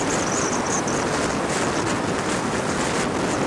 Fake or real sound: real